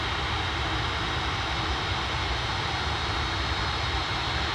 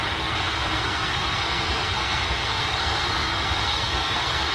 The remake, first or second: second